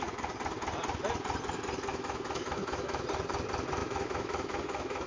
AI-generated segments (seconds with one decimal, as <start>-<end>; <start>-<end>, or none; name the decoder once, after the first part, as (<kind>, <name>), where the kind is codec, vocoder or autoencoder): 1.9-3.0 (autoencoder, DAC-VAE); 3.8-5.1